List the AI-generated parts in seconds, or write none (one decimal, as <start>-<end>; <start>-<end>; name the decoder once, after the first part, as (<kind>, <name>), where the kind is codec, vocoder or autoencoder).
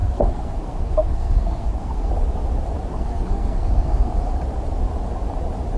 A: 0.0-2.1 (codec, SNAC); 2.9-4.1